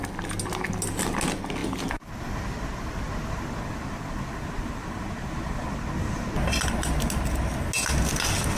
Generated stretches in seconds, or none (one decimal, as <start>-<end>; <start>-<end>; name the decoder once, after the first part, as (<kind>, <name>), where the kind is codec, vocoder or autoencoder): none